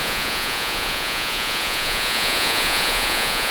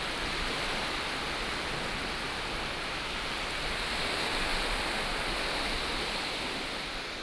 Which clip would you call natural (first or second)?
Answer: second